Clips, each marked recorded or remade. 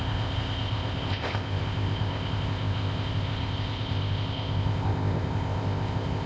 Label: remade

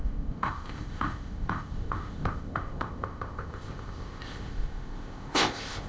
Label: remade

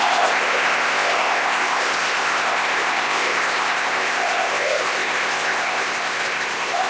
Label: remade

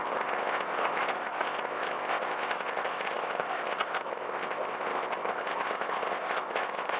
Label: remade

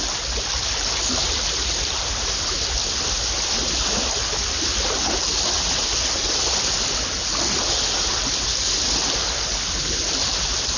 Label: recorded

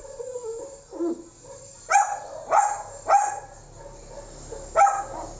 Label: recorded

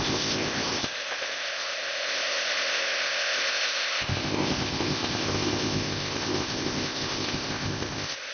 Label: remade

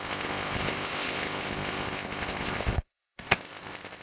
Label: remade